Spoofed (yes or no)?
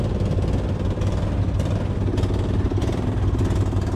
no